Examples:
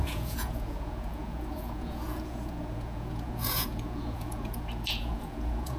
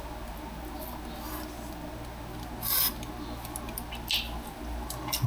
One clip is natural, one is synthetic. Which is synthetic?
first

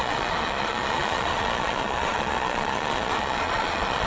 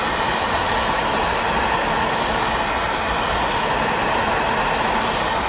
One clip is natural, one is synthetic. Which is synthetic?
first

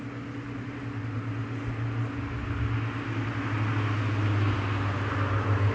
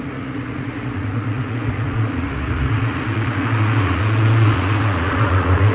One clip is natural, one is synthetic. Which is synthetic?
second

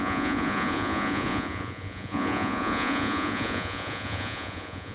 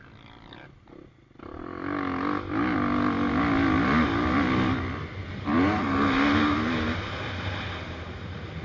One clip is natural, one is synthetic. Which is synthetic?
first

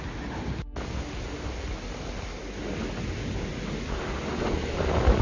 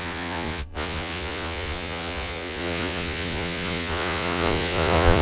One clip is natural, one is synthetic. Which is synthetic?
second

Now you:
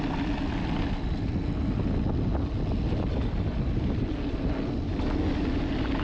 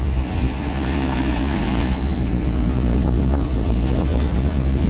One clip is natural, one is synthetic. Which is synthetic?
second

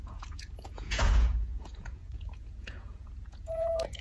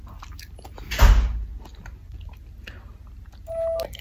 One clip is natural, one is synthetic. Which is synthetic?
first